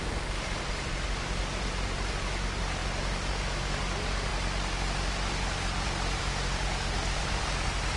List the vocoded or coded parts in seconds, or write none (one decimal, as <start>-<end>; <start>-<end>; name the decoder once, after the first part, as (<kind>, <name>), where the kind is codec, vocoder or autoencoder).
none